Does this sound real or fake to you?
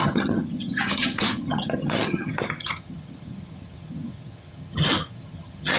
fake